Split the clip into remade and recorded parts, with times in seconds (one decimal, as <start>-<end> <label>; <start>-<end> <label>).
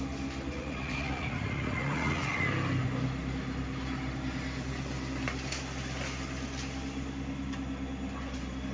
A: 0.0-0.5 recorded; 0.5-2.5 remade; 2.5-8.7 recorded